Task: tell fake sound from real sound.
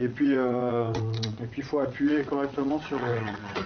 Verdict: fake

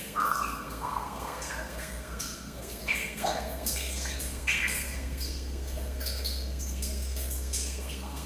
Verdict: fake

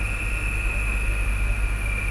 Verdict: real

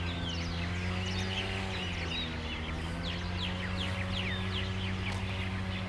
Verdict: real